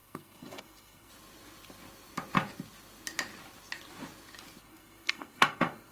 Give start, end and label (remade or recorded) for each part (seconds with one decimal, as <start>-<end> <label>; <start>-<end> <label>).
0.0-1.1 remade; 1.1-4.6 recorded; 4.6-5.9 remade